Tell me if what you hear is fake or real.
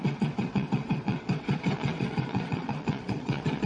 fake